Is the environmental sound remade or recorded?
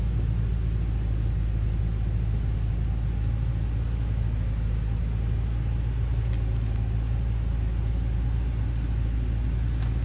recorded